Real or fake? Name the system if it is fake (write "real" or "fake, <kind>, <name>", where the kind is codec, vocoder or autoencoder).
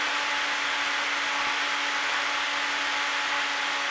real